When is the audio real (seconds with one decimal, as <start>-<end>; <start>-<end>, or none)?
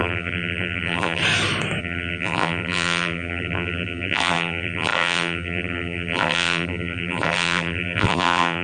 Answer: 1.2-1.8